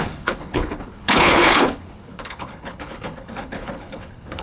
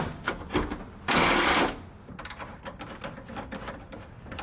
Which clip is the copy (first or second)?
first